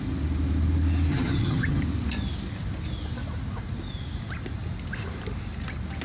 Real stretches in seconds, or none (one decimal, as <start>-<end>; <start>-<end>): 0.0-1.1; 1.8-6.0